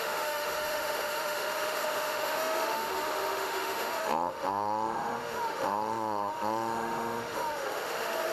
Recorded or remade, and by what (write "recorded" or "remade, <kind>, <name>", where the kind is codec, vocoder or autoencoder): remade, autoencoder, DAC-VAE